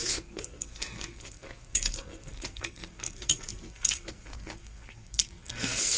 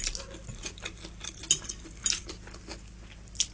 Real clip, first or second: second